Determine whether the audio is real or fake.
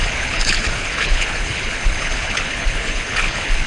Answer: fake